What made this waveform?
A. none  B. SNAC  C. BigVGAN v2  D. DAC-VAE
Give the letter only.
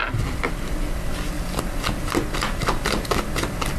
A